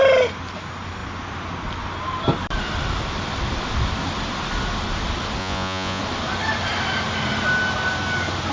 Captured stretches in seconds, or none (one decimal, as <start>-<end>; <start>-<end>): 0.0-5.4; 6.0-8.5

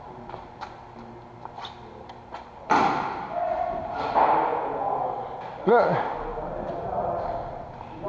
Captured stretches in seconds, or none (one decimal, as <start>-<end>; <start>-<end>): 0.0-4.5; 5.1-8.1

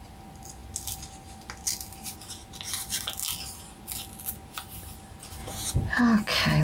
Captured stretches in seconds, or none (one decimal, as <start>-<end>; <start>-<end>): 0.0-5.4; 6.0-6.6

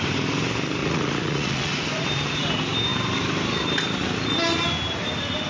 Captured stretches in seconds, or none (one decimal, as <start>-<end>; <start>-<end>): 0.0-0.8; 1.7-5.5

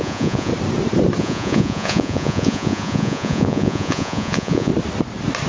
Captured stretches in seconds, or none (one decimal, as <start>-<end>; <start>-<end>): 0.5-1.2; 4.7-5.5